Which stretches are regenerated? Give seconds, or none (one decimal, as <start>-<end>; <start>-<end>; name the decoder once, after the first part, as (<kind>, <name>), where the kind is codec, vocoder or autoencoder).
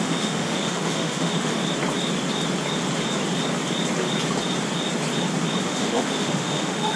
0.0-1.6 (autoencoder, DAC-VAE); 5.6-7.0